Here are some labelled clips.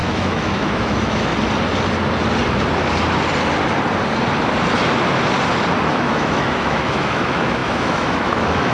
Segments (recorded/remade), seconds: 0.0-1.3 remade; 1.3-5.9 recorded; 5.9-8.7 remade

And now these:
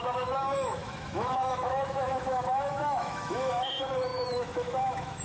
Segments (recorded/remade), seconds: 0.0-5.2 remade